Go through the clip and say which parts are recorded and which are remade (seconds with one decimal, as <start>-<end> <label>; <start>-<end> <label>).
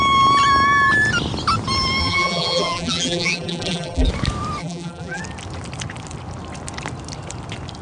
0.0-2.0 recorded; 2.0-4.1 remade; 4.1-4.6 recorded; 4.6-5.2 remade; 5.2-7.8 recorded